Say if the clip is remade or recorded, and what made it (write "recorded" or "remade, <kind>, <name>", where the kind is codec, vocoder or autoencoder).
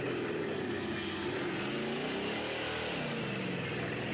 recorded